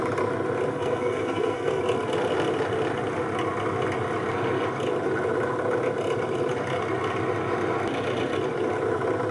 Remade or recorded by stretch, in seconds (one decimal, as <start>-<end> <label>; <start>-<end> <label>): 0.0-0.7 recorded; 0.7-1.8 remade; 1.8-9.3 recorded